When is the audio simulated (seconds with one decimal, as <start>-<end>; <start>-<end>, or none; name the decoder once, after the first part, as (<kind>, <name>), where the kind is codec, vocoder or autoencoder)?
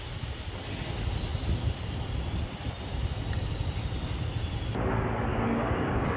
5.3-6.2 (codec, DAC)